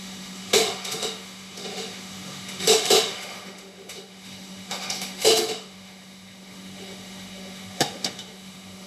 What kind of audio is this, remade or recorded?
remade